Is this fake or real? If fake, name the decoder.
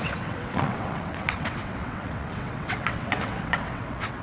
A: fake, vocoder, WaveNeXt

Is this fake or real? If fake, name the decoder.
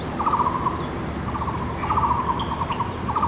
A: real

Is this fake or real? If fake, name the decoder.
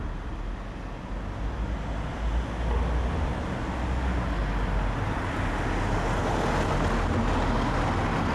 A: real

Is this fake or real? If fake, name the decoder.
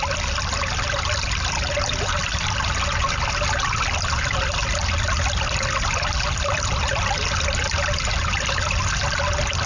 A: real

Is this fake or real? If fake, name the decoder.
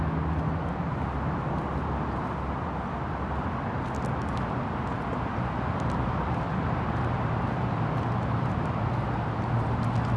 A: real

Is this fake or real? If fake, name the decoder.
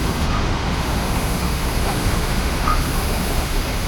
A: fake, autoencoder, DAC-VAE